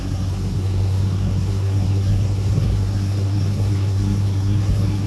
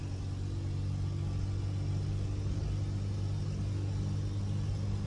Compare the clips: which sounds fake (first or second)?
first